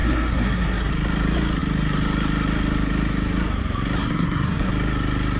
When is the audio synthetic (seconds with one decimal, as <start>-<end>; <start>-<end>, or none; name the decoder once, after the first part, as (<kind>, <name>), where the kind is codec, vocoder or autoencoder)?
0.0-0.9 (codec, SNAC); 4.0-4.7